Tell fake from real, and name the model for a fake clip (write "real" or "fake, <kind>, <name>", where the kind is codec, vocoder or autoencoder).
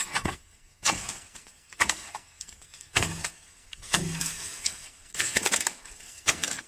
fake, codec, SNAC